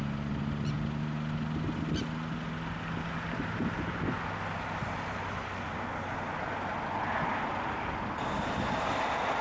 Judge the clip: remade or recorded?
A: recorded